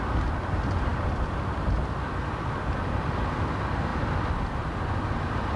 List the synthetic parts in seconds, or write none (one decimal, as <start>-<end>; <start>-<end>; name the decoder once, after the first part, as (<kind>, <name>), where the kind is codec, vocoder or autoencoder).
0.9-2.0 (vocoder, BigVGAN v2)